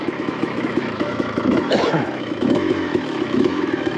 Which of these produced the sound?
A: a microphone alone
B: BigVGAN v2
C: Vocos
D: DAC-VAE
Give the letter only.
D